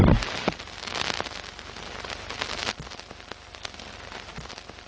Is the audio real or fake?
real